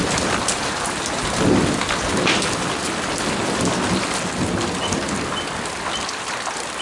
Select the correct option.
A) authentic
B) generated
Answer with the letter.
A